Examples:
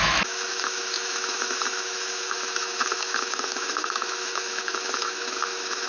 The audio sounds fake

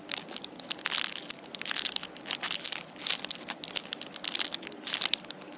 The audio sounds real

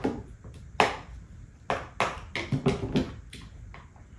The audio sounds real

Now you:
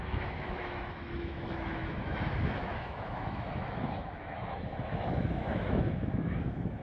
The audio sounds fake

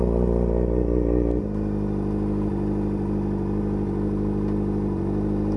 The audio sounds real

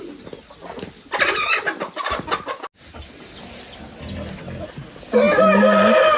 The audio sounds real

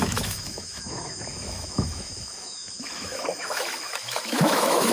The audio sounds fake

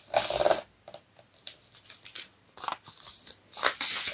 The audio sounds real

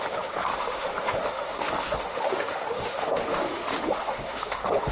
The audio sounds fake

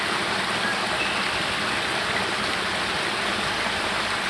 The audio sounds real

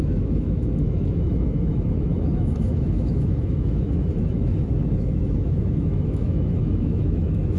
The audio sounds fake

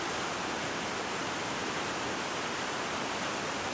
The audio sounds real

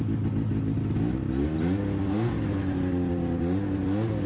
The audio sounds real